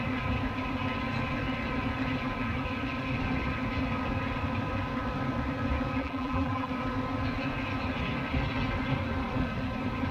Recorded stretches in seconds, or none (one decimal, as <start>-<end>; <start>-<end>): 0.0-6.0; 6.7-10.1